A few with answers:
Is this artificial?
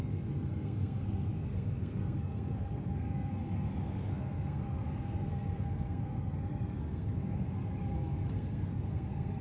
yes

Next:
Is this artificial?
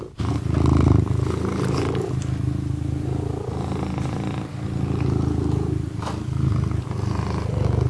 no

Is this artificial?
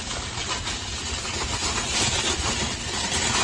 no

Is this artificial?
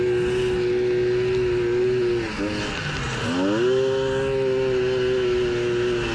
no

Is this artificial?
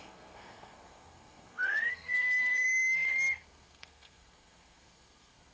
yes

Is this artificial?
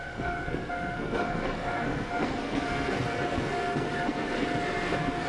yes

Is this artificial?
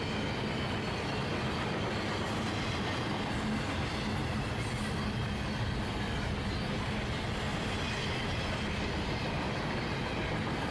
no